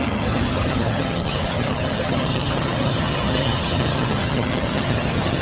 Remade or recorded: remade